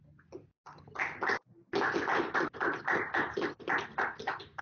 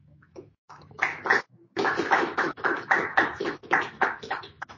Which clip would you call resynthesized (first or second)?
second